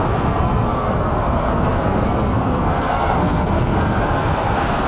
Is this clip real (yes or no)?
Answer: no